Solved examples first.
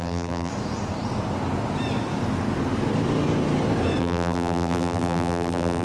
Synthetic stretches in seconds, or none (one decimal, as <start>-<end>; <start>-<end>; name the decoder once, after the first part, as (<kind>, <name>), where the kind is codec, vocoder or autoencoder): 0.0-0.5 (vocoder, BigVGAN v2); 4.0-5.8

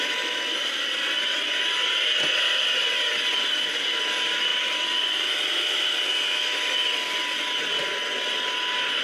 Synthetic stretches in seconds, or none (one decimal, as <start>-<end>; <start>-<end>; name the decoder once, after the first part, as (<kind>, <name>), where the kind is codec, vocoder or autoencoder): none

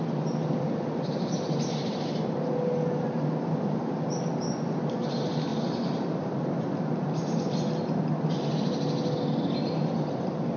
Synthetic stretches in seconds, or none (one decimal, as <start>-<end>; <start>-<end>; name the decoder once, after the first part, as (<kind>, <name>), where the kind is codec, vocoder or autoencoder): 5.5-6.6 (vocoder, BigVGAN v2)